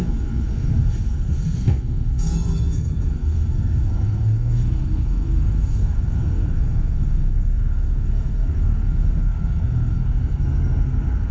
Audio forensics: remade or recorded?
remade